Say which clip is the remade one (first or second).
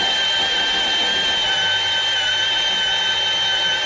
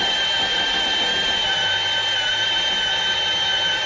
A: second